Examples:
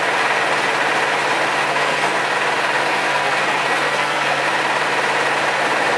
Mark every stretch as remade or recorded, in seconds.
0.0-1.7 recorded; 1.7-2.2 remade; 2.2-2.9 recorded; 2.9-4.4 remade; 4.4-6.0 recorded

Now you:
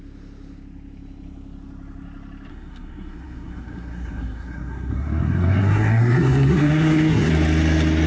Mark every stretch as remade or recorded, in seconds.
0.0-2.5 recorded; 2.5-7.3 remade; 7.3-8.1 recorded

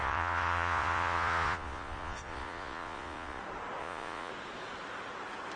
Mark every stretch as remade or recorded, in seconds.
0.0-3.4 remade; 3.4-3.8 recorded; 3.8-4.3 remade; 4.3-5.6 recorded